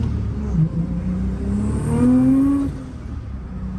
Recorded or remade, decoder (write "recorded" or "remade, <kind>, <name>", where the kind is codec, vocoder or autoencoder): recorded